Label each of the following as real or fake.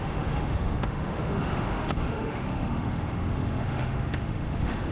fake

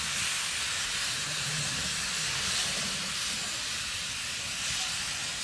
real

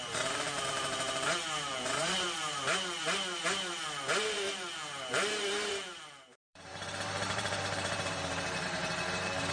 fake